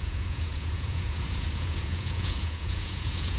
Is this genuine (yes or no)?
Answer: no